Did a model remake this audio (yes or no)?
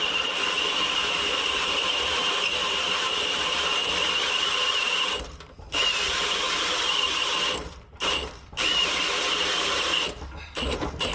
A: yes